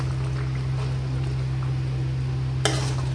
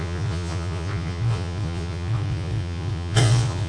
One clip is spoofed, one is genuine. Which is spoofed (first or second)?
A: second